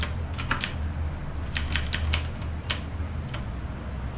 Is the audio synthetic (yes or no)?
no